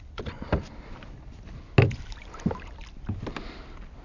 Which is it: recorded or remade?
recorded